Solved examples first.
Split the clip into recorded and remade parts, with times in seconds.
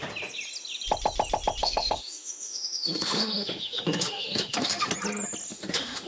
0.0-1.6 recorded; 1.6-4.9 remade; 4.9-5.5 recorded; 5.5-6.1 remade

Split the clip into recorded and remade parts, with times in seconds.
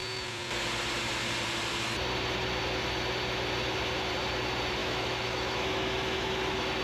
0.0-4.8 recorded; 4.8-6.3 remade; 6.3-6.8 recorded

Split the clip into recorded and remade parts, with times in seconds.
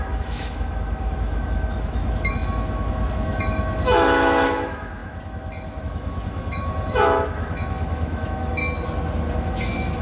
0.0-8.6 remade; 8.6-9.3 recorded; 9.3-10.0 remade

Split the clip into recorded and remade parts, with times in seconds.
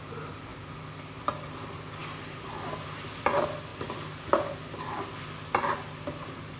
0.0-6.6 recorded